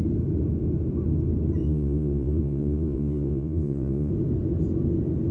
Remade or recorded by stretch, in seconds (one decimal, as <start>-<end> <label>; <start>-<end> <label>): 0.0-1.6 recorded; 1.6-4.1 remade; 4.1-5.3 recorded